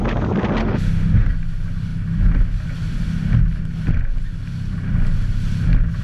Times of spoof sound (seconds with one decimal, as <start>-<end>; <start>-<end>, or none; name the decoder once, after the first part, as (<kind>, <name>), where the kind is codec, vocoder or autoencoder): 0.6-1.3 (autoencoder, DAC-VAE)